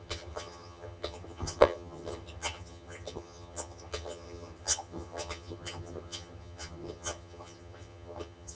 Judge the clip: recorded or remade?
remade